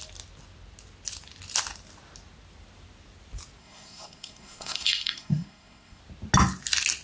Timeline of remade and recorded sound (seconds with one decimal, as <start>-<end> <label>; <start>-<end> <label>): 0.0-3.6 recorded; 3.6-6.0 remade; 6.0-7.0 recorded